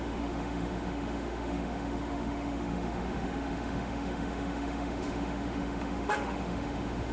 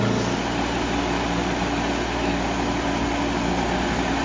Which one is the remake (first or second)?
first